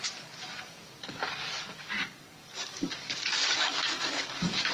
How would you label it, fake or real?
fake